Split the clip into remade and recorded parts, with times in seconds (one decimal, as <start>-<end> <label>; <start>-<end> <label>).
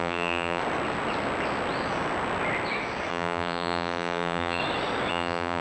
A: 0.0-0.6 remade; 0.6-3.1 recorded; 3.1-4.6 remade; 4.6-5.1 recorded; 5.1-5.6 remade